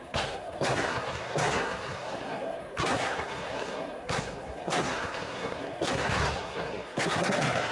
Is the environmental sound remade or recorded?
remade